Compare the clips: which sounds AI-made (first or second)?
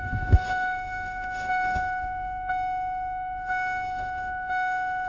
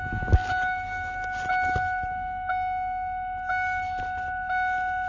first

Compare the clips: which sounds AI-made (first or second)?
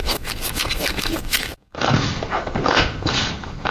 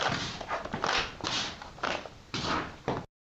first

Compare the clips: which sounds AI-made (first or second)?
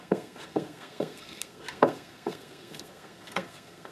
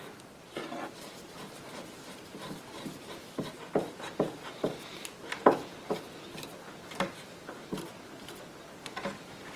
first